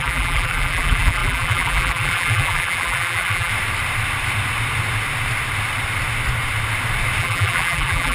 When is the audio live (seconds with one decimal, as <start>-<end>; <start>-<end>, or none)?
3.5-7.2